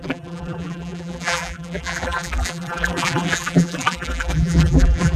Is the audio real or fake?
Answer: fake